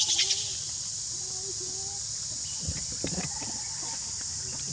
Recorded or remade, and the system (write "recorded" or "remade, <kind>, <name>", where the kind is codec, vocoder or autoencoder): recorded